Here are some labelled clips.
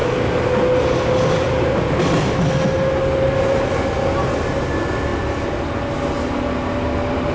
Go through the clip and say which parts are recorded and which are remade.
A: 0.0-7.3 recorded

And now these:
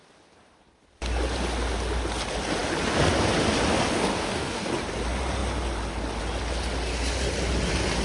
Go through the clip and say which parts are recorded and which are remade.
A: 0.0-4.1 recorded; 4.1-4.7 remade; 4.7-8.0 recorded

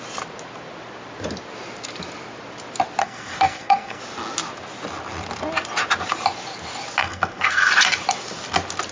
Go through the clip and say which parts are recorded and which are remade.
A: 0.0-3.0 recorded; 3.0-4.0 remade; 4.0-7.0 recorded; 7.0-7.7 remade; 7.7-8.9 recorded